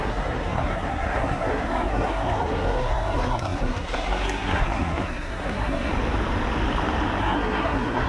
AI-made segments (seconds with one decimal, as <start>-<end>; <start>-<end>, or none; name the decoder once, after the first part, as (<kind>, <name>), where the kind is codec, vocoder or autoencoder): 0.0-5.9 (codec, SNAC); 7.2-8.1